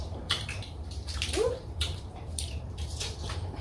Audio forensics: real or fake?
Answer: fake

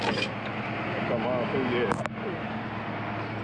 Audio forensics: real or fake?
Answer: real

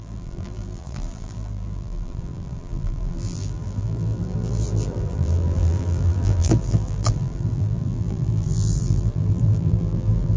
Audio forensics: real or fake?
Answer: fake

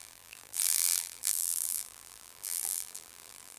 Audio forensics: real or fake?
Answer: fake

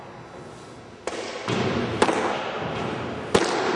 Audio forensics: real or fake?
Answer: real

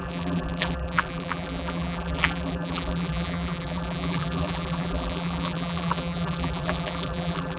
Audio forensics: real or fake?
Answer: fake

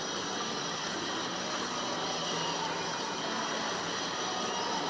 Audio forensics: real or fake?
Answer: real